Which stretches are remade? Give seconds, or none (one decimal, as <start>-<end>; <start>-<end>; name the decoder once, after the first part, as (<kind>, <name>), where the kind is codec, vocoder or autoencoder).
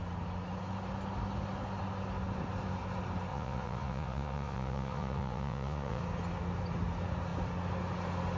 3.3-6.0 (vocoder, Vocos)